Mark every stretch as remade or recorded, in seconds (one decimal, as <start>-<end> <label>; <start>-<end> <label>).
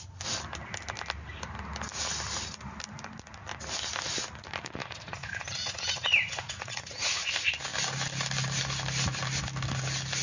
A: 0.0-4.8 recorded; 4.8-7.3 remade; 7.3-10.2 recorded